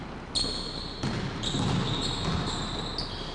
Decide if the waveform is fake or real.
real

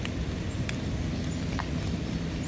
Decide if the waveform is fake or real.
real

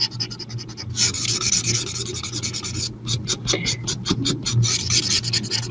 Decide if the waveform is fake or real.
real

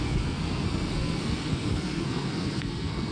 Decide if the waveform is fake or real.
fake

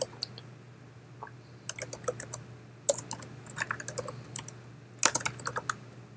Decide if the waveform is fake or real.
real